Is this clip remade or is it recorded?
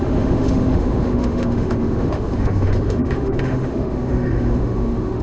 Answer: remade